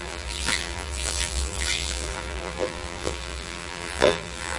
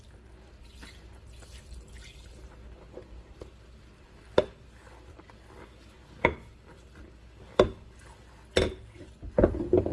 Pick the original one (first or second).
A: second